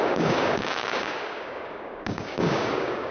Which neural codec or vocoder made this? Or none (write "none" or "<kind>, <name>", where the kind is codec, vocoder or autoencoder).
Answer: codec, DAC